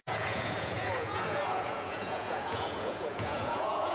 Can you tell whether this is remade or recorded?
remade